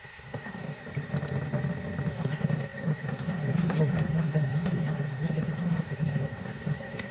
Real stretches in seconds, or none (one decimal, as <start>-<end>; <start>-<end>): 0.8-2.1